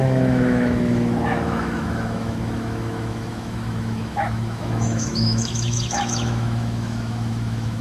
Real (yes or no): no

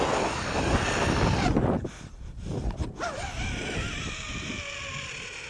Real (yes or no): yes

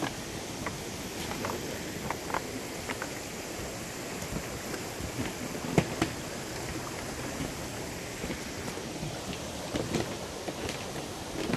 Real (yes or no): yes